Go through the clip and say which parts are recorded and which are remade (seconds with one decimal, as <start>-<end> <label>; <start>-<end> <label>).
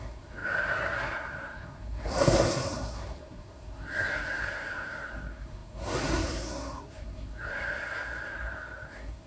0.0-9.3 remade